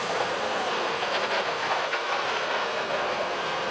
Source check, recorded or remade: remade